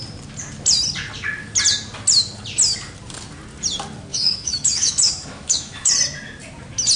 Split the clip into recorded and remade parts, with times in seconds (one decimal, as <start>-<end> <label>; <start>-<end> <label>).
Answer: 0.0-4.1 recorded; 4.1-5.9 remade; 5.9-7.0 recorded